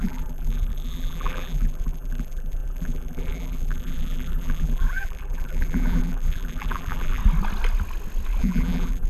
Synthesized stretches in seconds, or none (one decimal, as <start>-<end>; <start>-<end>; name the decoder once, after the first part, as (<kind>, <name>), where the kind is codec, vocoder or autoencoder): 0.0-7.2 (vocoder, BigVGAN v2); 8.4-9.1

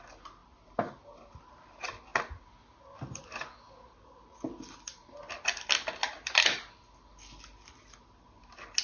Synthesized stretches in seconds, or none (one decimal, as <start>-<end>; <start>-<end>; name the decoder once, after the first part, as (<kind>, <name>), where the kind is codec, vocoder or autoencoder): none

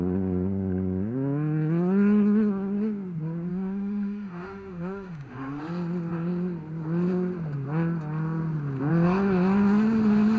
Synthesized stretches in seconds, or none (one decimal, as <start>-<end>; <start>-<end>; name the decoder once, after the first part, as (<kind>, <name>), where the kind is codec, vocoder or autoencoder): 3.5-5.6 (autoencoder, DAC-VAE)

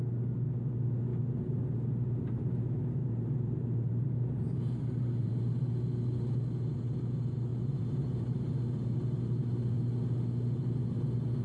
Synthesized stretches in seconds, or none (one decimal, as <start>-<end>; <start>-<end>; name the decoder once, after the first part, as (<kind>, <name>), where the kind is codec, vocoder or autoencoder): 3.0-5.4 (vocoder, BigVGAN v2); 7.5-8.5